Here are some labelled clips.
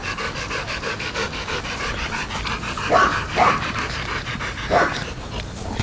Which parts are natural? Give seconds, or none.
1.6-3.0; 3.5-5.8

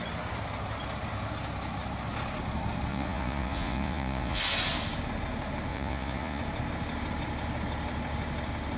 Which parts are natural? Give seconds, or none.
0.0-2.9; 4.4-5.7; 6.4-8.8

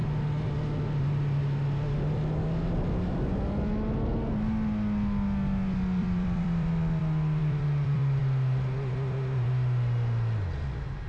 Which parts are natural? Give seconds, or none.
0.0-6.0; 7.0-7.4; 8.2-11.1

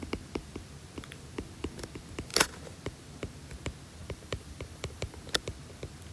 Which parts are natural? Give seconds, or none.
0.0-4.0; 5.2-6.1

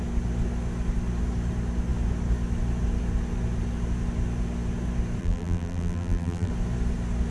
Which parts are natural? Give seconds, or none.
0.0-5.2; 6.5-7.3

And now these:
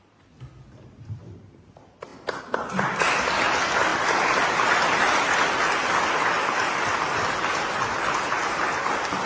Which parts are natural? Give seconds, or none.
0.0-9.3

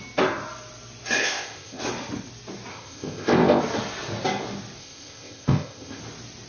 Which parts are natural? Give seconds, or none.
0.0-1.2; 1.8-2.7; 3.6-4.8; 6.0-6.5